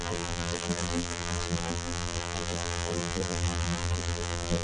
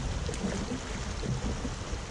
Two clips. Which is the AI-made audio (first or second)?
first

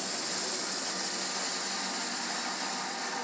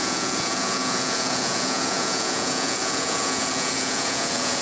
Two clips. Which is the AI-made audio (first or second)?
second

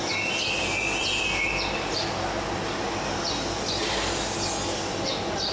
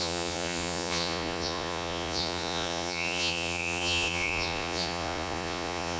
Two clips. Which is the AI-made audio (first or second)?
second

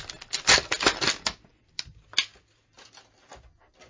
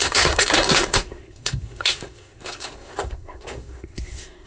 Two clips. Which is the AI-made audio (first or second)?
second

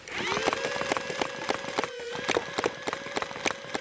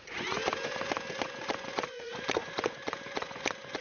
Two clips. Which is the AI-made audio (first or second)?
second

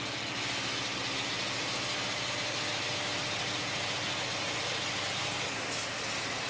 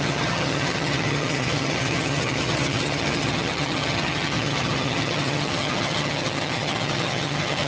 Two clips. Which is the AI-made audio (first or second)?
second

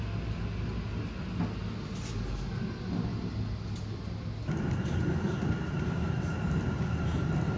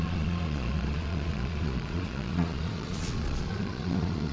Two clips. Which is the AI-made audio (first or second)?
second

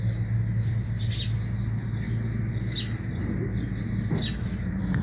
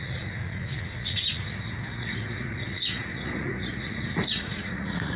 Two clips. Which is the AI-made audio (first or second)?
second